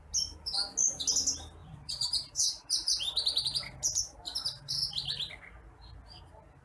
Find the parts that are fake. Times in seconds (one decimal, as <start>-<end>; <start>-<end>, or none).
1.6-3.8